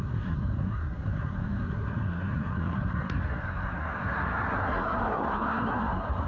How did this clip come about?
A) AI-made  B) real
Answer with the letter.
A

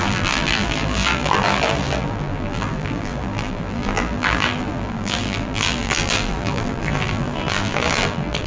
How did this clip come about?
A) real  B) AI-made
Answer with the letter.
B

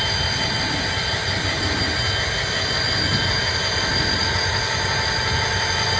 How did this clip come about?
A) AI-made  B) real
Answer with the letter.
B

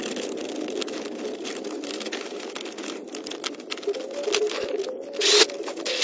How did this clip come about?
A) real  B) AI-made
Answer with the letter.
A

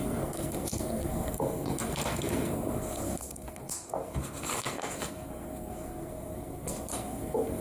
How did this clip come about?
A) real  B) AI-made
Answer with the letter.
B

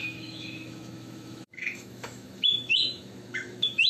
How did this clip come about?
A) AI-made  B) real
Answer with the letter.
A